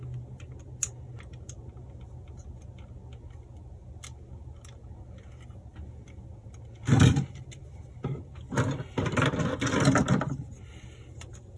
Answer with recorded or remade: recorded